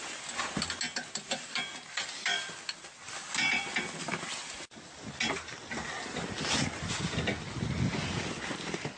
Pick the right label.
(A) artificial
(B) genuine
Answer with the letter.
B